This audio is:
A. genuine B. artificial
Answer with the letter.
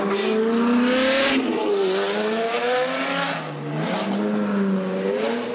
A